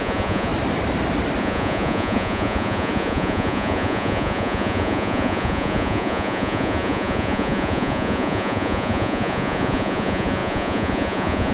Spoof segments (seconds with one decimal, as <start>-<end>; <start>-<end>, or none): 0.0-0.5; 1.4-11.5